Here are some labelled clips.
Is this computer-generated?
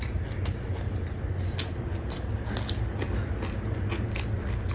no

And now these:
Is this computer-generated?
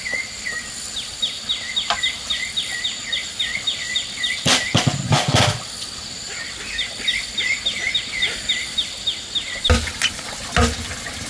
no